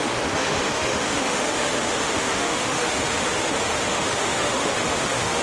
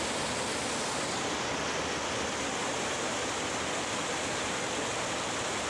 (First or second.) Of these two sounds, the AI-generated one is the first